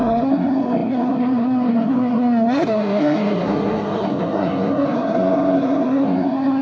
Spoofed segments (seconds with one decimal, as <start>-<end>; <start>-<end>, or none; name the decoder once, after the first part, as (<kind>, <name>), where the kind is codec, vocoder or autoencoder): 0.0-6.6 (codec, SNAC)